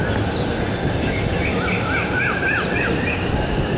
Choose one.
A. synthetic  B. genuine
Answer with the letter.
B